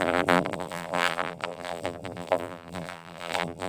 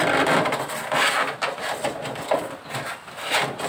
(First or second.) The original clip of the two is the second